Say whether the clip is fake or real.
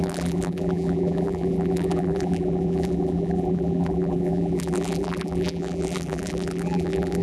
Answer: fake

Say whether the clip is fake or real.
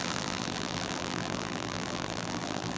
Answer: fake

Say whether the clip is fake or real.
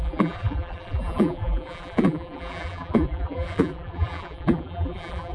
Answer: fake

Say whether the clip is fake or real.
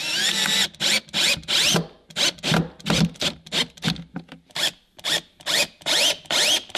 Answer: real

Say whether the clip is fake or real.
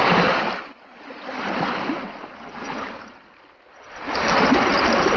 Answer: fake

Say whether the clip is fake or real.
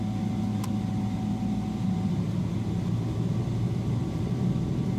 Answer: real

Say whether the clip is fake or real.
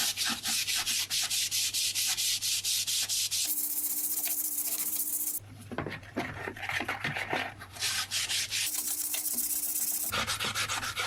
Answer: fake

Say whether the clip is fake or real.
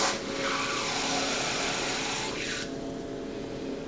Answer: real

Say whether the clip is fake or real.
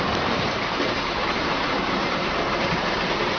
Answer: fake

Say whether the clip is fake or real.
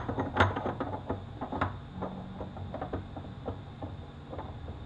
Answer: real